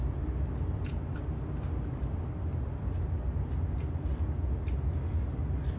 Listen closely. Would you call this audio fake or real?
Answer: real